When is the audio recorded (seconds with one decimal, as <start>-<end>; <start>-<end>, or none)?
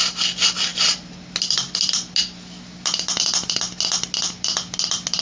0.0-5.2